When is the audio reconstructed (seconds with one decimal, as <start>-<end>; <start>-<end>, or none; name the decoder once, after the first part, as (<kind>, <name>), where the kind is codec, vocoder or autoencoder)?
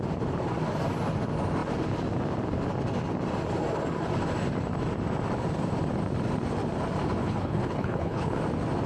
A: 7.2-8.4 (codec, HILCodec)